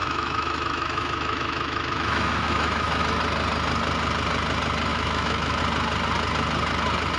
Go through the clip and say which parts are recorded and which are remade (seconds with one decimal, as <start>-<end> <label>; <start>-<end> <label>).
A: 0.0-3.0 remade; 3.0-4.9 recorded; 4.9-5.6 remade; 5.6-7.2 recorded